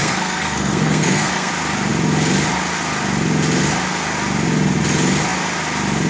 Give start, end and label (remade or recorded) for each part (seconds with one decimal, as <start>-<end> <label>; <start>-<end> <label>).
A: 0.0-1.5 remade; 1.5-6.1 recorded